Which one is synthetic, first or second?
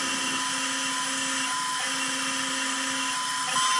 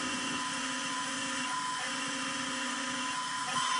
second